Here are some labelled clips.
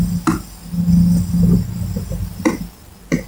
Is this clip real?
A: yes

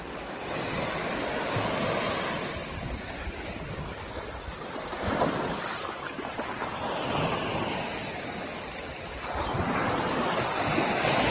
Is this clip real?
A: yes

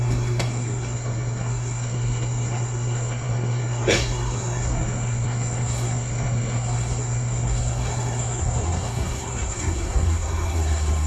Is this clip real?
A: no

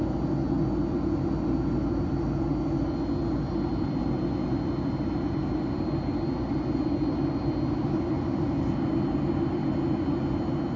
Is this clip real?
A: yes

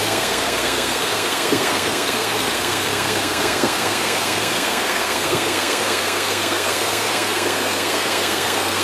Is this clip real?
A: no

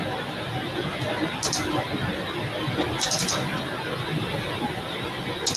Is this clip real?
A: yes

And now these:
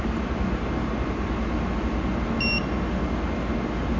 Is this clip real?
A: yes